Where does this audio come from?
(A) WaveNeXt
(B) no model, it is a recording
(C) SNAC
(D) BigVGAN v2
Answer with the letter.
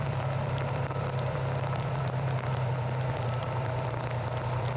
D